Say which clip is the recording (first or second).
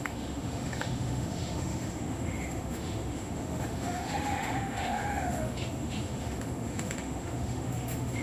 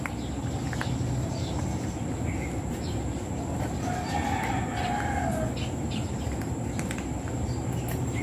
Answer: second